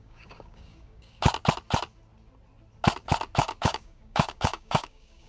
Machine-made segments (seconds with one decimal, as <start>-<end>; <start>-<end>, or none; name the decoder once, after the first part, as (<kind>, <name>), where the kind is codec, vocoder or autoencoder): 0.0-1.3 (codec, DAC); 3.4-5.3